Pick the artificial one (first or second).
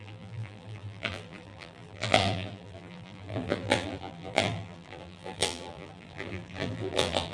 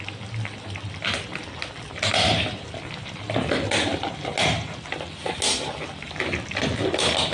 first